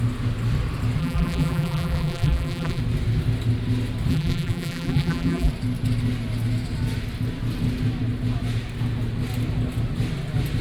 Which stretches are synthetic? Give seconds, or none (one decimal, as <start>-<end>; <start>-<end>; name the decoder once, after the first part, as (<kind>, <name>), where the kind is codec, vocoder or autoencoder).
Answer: 1.0-2.8 (vocoder, BigVGAN v2); 4.1-5.5